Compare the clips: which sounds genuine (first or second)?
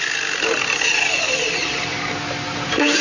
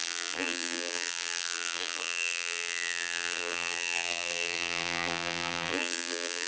first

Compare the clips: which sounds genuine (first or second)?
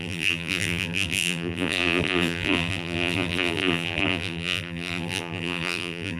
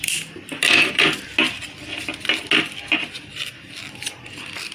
second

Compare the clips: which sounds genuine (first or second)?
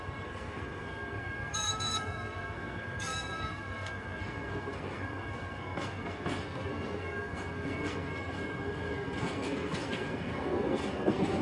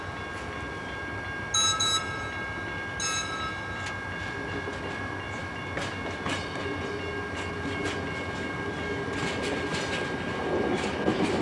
second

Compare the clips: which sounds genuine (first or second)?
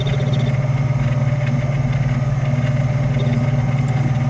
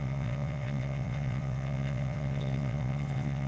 first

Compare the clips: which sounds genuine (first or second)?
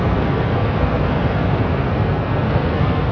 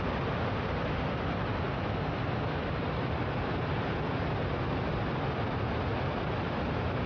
second